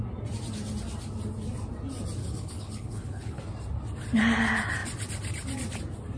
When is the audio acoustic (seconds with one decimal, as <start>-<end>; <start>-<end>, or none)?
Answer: 0.0-2.2; 3.4-6.2